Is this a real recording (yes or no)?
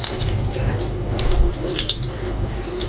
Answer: no